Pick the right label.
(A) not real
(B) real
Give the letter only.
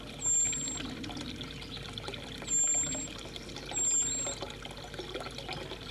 B